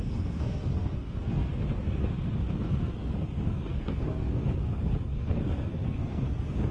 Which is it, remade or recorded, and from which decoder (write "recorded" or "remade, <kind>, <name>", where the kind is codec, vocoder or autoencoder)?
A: remade, codec, SNAC